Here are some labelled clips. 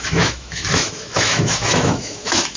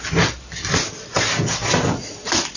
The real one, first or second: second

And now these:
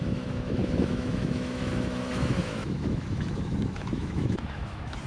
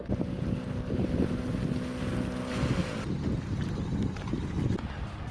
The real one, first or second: second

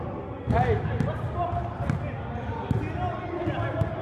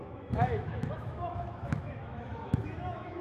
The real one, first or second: first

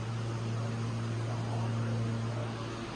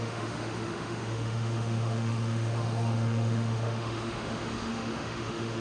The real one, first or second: first